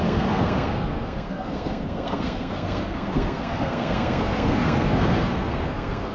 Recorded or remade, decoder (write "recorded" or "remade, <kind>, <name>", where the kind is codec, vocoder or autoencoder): remade, codec, SNAC